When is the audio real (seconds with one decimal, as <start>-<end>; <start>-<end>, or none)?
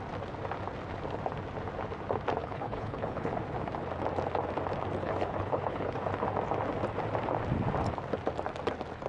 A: 0.0-2.4; 3.3-5.0; 6.1-9.1